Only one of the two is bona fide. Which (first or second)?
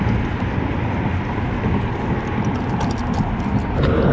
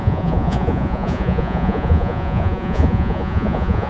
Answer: first